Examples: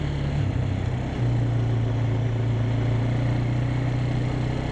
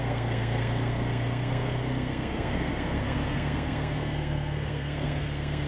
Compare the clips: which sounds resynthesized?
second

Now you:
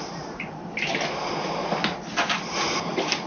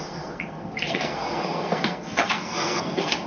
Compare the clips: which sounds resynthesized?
second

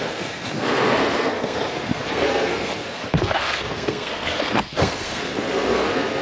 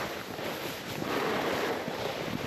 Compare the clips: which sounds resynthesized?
first